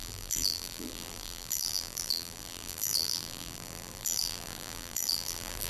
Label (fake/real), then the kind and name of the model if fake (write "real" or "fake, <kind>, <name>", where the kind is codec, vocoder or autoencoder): fake, vocoder, BigVGAN v2